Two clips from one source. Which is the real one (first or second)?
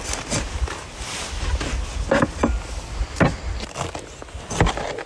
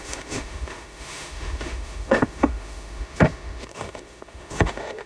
first